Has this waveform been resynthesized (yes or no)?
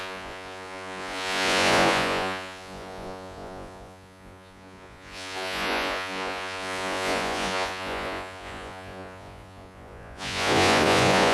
yes